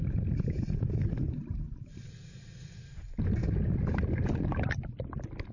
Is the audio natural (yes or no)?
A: yes